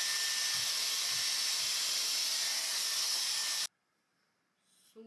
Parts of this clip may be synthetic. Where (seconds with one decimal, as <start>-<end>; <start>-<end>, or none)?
none